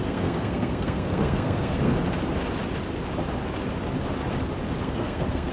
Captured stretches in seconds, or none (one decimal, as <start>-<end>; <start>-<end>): 1.9-4.8